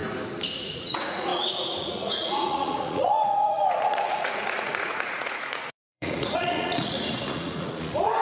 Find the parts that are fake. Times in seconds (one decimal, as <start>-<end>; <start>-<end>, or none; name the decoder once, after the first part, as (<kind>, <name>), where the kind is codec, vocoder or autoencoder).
0.6-8.2 (vocoder, Vocos)